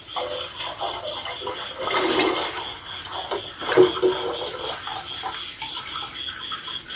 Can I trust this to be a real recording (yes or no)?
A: yes